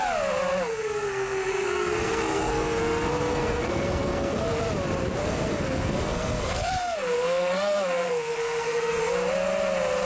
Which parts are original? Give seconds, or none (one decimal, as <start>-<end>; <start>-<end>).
0.0-0.7; 4.6-5.2; 9.0-10.1